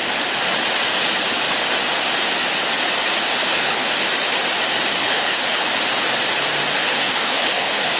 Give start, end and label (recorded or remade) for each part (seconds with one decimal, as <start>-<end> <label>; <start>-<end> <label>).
0.0-3.4 recorded; 3.4-3.9 remade; 3.9-5.0 recorded; 5.0-5.7 remade; 5.7-6.8 recorded; 6.8-8.0 remade